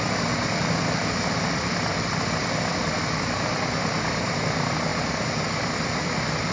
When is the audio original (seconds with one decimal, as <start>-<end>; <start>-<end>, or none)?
0.0-1.9; 2.4-6.5